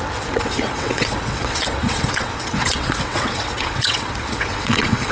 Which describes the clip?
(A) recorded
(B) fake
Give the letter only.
B